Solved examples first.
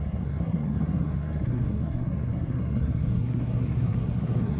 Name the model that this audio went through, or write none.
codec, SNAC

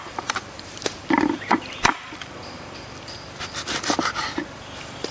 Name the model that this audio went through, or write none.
vocoder, BigVGAN v2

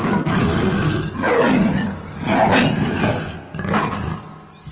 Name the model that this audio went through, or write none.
none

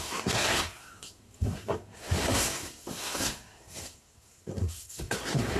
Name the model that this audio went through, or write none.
codec, SNAC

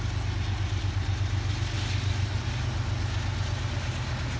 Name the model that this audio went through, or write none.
none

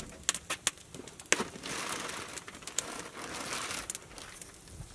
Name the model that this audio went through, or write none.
none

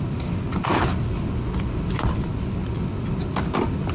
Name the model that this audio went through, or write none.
none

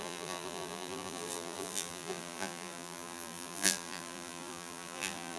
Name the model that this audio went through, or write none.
vocoder, BigVGAN v2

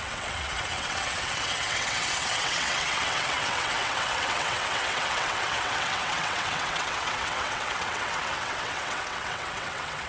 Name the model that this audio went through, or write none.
vocoder, WaveNeXt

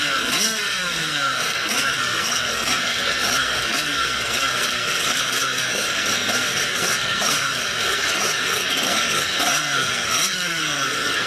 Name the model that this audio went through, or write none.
codec, SNAC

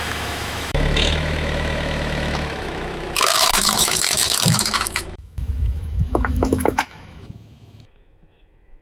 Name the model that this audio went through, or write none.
autoencoder, DAC-VAE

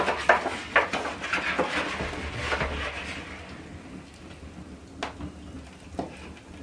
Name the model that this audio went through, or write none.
none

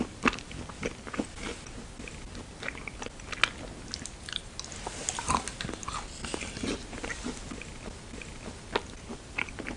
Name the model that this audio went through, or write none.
none